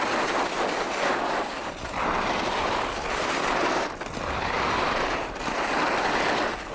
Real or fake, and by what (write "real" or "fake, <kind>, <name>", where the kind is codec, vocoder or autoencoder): real